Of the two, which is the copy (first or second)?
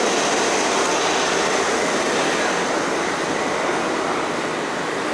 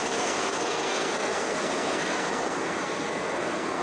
second